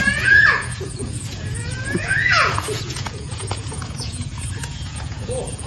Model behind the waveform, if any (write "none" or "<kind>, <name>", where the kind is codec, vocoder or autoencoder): vocoder, Vocos